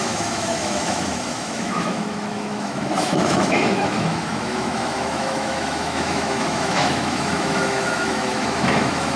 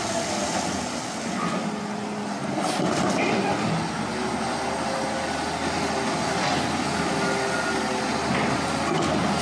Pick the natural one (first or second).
second